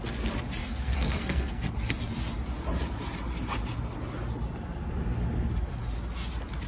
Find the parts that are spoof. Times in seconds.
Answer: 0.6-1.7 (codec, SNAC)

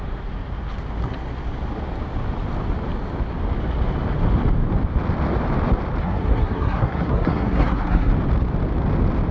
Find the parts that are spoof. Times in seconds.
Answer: 6.0-8.1 (codec, SNAC)

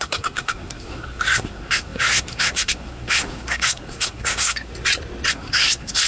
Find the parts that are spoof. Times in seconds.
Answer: 0.0-4.7 (codec, SNAC); 5.3-6.1

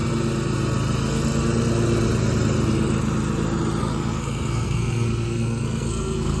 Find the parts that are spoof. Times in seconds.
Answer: 3.8-6.4 (codec, SNAC)

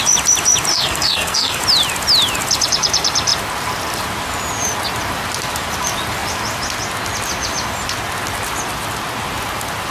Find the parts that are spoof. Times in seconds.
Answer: 0.7-1.6 (codec, SNAC)